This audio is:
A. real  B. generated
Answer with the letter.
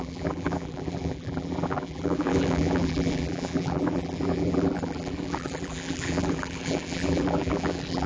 B